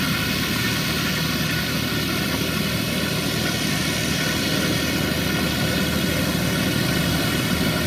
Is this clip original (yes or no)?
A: yes